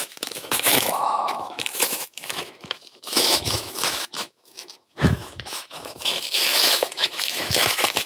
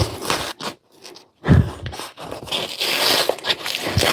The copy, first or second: first